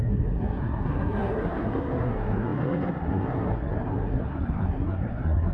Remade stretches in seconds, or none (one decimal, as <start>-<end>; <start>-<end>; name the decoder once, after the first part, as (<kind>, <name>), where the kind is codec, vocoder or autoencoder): 0.0-5.5 (codec, SNAC)